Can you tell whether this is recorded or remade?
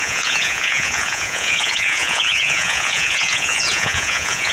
remade